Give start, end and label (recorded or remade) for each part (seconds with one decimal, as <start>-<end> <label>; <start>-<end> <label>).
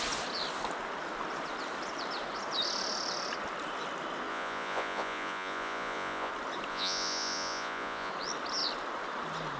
0.0-4.3 recorded; 4.3-6.3 remade; 6.3-6.7 recorded; 6.7-8.1 remade; 8.1-9.6 recorded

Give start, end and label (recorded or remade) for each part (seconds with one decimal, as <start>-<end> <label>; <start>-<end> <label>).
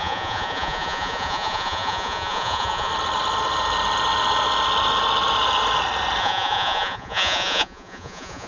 0.0-2.9 remade; 2.9-6.2 recorded; 6.2-8.5 remade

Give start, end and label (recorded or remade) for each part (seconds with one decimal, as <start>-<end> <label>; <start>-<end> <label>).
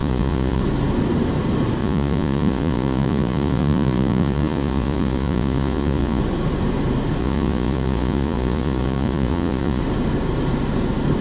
0.0-0.6 remade; 0.6-1.8 recorded; 1.8-6.2 remade; 6.2-7.2 recorded; 7.2-9.8 remade; 9.8-11.2 recorded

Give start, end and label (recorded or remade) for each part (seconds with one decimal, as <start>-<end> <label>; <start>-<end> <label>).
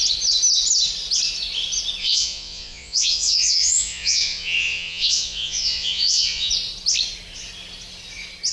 0.0-2.0 recorded; 2.0-6.5 remade; 6.5-8.5 recorded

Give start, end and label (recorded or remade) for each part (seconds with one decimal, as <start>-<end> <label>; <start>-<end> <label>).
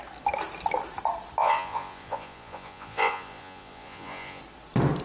0.0-1.4 recorded; 1.4-4.4 remade; 4.4-5.0 recorded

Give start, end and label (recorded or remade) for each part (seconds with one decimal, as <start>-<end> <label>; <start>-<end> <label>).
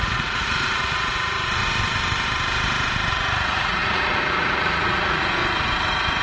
0.0-1.6 remade; 1.6-3.1 recorded; 3.1-5.4 remade; 5.4-6.2 recorded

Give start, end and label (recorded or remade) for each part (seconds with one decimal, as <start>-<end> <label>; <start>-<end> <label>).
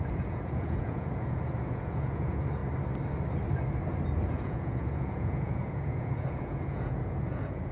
0.0-2.6 remade; 2.6-4.2 recorded; 4.2-7.7 remade